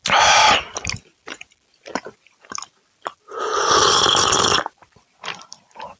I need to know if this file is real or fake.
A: real